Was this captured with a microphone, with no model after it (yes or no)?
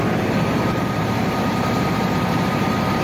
no